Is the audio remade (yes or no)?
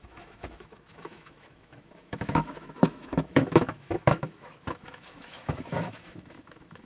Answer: yes